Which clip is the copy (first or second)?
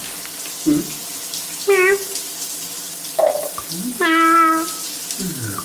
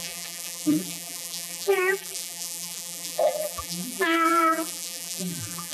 second